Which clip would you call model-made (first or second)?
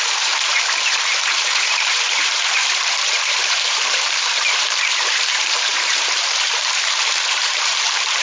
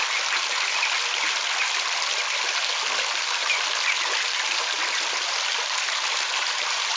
first